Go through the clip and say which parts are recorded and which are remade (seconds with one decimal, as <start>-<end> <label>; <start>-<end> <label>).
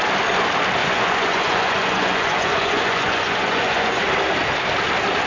0.0-0.8 recorded; 0.8-4.0 remade; 4.0-5.3 recorded